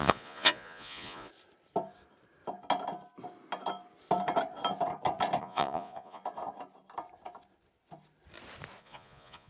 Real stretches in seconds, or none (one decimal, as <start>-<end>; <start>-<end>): 1.3-5.4; 6.2-8.8